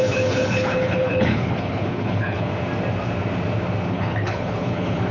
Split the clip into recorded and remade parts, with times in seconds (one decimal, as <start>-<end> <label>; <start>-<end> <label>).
0.0-2.5 remade; 2.5-3.9 recorded; 3.9-5.1 remade